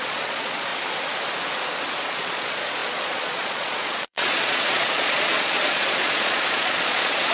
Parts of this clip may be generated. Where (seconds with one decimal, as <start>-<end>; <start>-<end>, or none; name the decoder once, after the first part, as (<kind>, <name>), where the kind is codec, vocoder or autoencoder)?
0.0-0.7 (vocoder, Vocos); 2.1-7.3